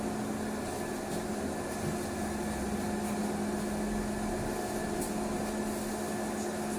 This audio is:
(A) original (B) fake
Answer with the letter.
A